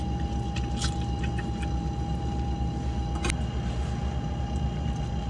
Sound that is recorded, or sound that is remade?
recorded